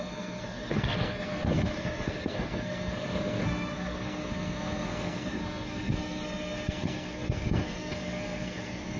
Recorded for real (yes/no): no